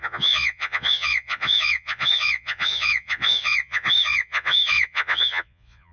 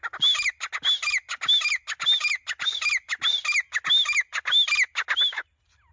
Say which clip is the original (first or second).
second